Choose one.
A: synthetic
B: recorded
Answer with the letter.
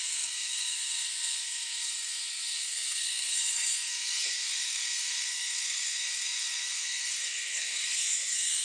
A